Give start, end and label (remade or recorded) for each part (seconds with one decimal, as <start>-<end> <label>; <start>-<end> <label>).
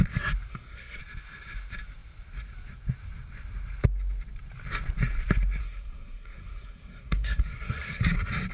0.0-0.5 recorded; 0.5-1.0 remade; 1.0-5.6 recorded; 5.6-8.0 remade; 8.0-8.5 recorded